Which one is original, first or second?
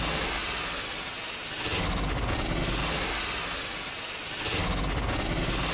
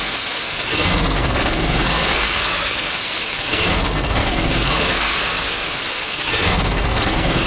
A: first